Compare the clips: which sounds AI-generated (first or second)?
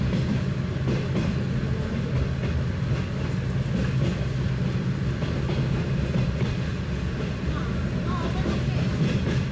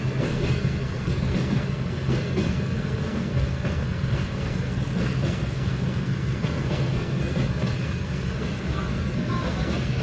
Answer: second